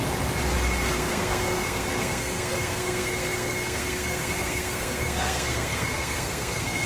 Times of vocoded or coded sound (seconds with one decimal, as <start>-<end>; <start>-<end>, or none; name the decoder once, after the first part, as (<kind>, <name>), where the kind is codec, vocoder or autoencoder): 0.9-6.9 (codec, SNAC)